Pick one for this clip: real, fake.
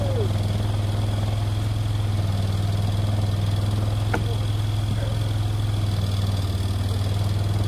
real